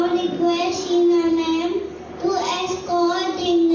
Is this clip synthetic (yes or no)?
no